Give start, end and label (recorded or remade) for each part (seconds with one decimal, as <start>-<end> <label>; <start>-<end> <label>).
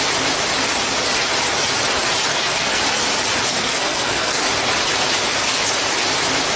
0.0-2.3 recorded; 2.3-2.8 remade; 2.8-3.5 recorded; 3.5-4.4 remade; 4.4-6.6 recorded